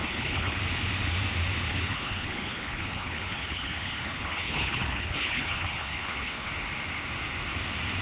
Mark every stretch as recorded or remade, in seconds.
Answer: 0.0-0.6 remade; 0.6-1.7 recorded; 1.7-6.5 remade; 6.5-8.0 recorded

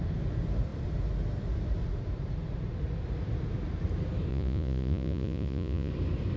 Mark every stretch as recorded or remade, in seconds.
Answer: 0.0-4.3 recorded; 4.3-5.9 remade; 5.9-6.4 recorded

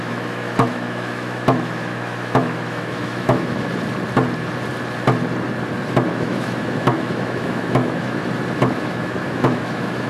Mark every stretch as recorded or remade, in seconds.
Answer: 0.0-3.7 remade; 3.7-6.1 recorded; 6.1-8.2 remade; 8.2-8.7 recorded; 8.7-10.1 remade

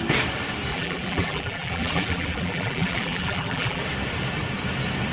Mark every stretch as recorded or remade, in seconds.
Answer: 0.0-0.7 recorded; 0.7-3.8 remade; 3.8-5.1 recorded

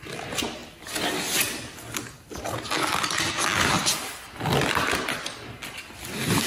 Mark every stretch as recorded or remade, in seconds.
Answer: 0.0-6.5 recorded